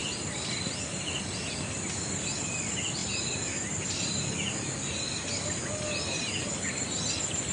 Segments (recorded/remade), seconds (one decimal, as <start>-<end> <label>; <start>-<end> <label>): 0.0-1.2 remade; 1.2-7.5 recorded